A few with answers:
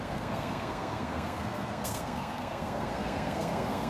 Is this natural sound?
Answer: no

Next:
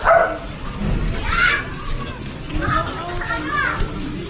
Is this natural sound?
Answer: yes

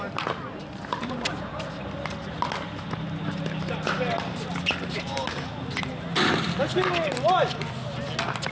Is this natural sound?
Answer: yes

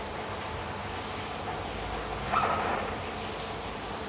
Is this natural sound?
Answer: yes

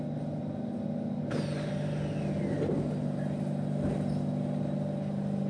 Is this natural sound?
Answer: yes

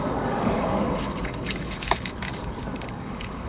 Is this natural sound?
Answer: no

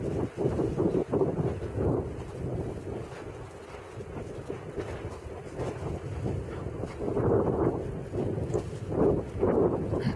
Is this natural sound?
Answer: yes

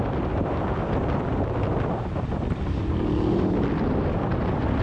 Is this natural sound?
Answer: yes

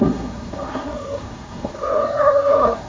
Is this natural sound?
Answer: no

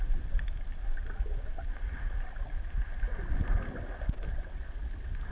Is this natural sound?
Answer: yes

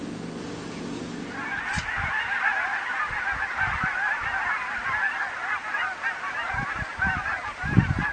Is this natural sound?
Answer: yes